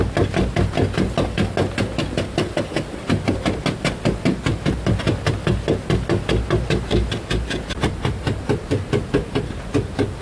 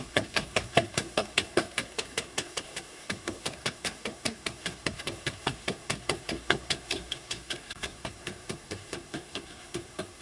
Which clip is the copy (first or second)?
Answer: second